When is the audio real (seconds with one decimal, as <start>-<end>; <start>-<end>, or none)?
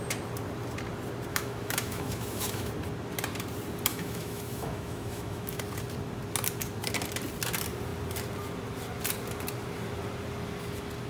0.0-1.3; 2.7-3.9; 5.6-11.1